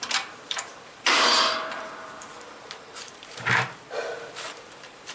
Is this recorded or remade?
remade